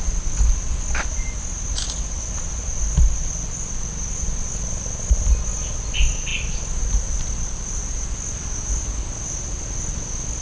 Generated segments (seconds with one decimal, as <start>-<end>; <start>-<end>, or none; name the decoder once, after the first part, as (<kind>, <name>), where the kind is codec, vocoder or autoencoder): none